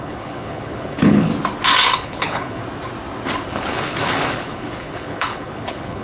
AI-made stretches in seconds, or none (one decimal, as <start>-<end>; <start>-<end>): 0.0-1.3; 1.9-2.6; 3.5-6.0

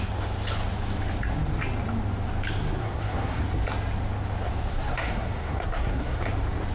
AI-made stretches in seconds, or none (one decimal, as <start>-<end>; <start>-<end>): 2.8-3.4; 4.7-6.2

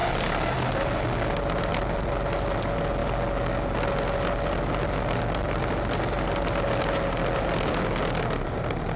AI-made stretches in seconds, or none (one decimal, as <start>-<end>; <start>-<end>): none

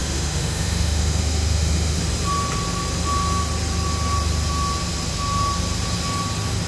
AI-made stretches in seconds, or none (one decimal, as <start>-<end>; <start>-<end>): 0.0-2.0

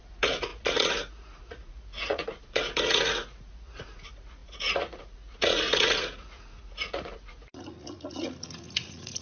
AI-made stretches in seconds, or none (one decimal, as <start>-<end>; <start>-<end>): 0.0-9.2

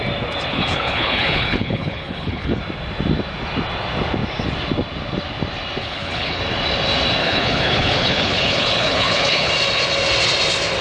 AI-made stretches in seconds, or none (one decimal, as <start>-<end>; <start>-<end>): 0.5-2.6; 5.8-6.4; 7.2-9.5

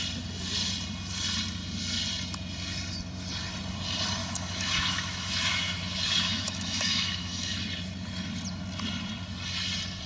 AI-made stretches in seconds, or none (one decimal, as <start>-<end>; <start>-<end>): 4.2-7.6